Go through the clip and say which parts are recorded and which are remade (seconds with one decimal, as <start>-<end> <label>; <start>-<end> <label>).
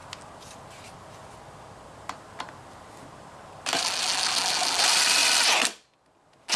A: 0.0-6.6 recorded